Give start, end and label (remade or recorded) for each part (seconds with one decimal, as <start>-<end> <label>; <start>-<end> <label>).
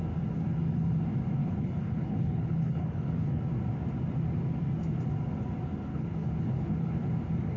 0.0-1.4 recorded; 1.4-3.4 remade; 3.4-5.9 recorded; 5.9-7.1 remade; 7.1-7.6 recorded